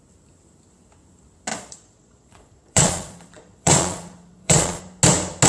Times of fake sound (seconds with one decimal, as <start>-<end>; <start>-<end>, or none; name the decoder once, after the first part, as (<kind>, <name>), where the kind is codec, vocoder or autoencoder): 1.5-4.8 (vocoder, Vocos)